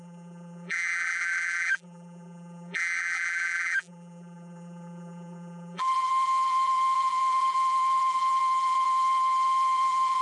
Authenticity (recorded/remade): remade